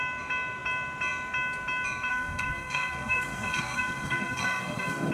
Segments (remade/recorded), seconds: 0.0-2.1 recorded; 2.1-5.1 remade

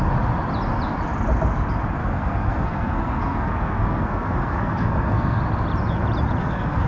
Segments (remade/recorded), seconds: 0.0-2.0 recorded; 2.0-5.4 remade; 5.4-6.4 recorded; 6.4-6.9 remade

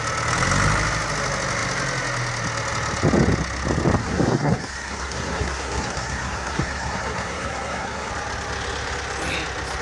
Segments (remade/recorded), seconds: 0.0-4.0 recorded; 4.0-8.1 remade; 8.1-9.8 recorded

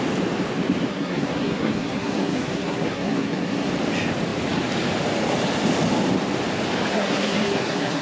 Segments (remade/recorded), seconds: 0.0-0.9 recorded; 0.9-3.7 remade; 3.7-6.9 recorded; 6.9-8.0 remade